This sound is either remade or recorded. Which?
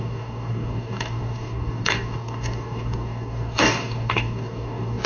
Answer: remade